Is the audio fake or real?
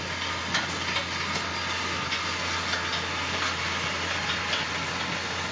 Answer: real